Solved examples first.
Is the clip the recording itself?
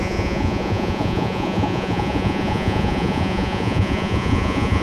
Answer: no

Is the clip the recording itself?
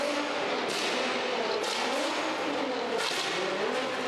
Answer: yes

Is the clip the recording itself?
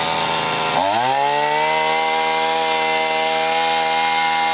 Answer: yes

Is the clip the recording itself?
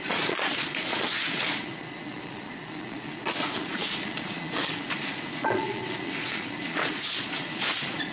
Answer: no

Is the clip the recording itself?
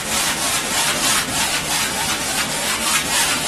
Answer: yes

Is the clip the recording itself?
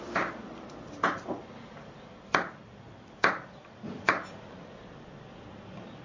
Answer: yes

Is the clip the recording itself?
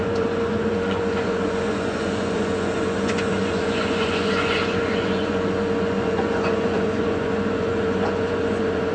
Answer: no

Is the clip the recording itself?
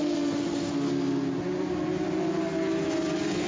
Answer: yes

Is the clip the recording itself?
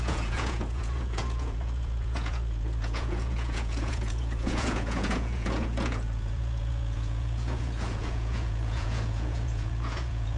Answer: no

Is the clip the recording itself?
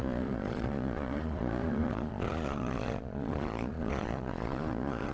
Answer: no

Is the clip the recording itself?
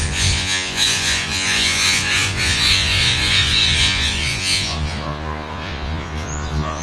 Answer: no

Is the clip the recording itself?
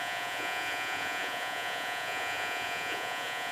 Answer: no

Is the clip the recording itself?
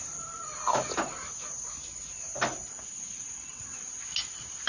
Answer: yes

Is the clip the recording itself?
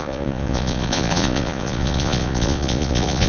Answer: no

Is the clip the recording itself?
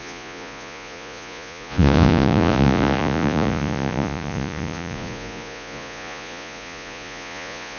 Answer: no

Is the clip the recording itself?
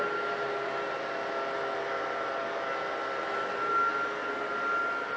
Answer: yes